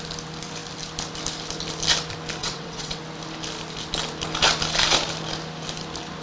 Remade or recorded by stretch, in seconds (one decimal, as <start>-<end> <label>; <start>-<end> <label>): 0.0-2.4 recorded; 2.4-3.0 remade; 3.0-6.2 recorded